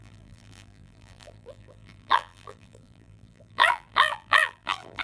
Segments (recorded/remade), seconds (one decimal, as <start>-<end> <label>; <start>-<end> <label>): 0.0-5.0 remade